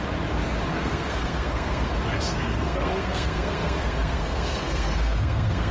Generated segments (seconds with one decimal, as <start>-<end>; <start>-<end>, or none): 0.7-1.9; 2.3-5.7